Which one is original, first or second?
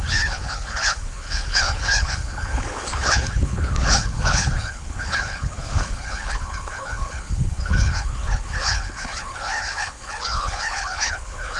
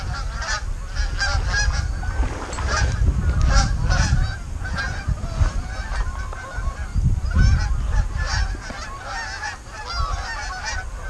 second